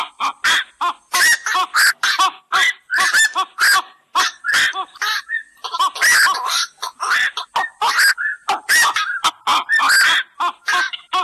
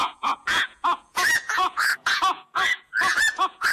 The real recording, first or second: first